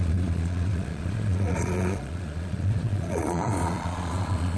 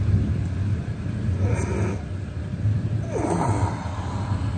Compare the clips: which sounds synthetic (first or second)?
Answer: first